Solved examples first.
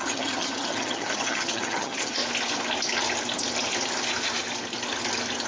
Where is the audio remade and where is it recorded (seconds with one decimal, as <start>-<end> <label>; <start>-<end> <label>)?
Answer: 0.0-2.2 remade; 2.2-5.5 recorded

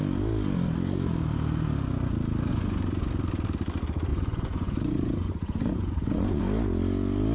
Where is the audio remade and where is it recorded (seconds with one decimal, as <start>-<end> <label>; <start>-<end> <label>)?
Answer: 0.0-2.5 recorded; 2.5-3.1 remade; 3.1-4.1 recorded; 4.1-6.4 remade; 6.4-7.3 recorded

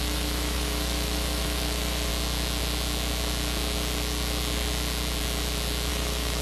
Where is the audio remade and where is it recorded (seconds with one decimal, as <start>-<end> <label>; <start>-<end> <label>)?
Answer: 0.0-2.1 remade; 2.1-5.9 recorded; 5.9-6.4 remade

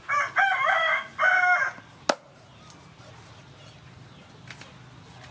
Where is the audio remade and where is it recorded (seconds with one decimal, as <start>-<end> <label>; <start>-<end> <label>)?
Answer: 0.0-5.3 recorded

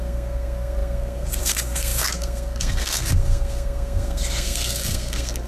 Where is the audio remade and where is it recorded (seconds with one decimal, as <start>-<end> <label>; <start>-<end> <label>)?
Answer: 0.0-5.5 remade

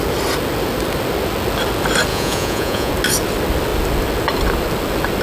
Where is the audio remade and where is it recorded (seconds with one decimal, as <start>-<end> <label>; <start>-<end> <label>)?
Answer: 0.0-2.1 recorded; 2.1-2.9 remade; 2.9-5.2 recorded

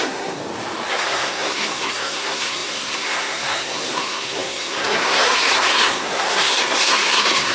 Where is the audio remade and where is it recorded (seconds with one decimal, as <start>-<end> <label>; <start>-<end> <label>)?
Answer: 0.0-0.4 remade; 0.4-0.9 recorded; 0.9-7.5 remade